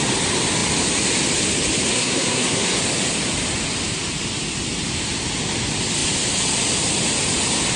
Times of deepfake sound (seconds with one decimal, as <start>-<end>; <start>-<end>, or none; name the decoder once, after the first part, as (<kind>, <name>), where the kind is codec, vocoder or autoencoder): 1.9-2.8 (codec, SNAC)

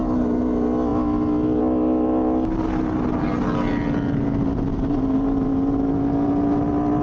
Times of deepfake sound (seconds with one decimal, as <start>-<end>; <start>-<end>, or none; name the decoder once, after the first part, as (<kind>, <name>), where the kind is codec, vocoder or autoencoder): 4.7-5.8 (vocoder, BigVGAN v2)